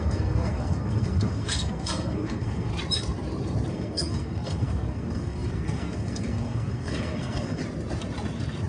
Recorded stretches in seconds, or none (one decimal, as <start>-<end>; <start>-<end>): 2.7-3.7; 7.6-8.7